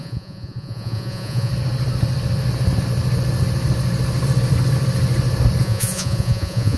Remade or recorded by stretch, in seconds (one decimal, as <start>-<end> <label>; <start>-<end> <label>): 0.0-1.5 remade; 1.5-5.6 recorded; 5.6-6.8 remade